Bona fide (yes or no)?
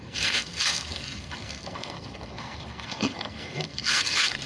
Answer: no